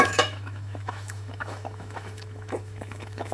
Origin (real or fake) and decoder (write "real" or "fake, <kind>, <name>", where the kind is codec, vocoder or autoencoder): fake, autoencoder, DAC-VAE